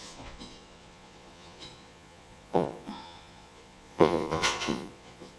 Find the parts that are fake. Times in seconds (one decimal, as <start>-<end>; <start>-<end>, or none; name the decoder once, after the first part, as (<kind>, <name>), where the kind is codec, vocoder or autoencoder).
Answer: 0.0-5.4 (vocoder, Vocos)